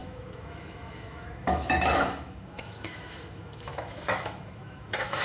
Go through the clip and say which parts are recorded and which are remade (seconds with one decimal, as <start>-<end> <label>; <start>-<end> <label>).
0.0-5.2 remade